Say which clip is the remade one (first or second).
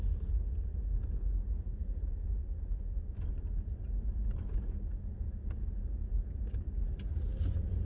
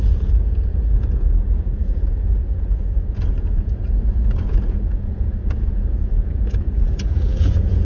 second